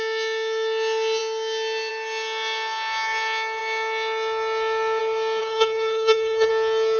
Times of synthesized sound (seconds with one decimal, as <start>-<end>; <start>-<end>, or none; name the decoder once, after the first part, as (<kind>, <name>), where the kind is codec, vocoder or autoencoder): 5.4-6.5 (codec, HILCodec)